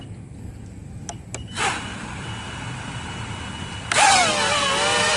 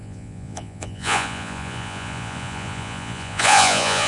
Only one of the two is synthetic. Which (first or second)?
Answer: second